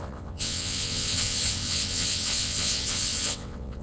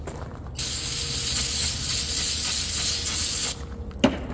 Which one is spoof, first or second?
first